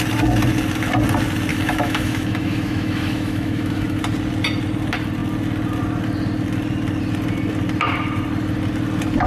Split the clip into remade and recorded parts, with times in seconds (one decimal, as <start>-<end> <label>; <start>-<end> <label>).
0.0-1.5 recorded; 1.5-4.0 remade; 4.0-9.3 recorded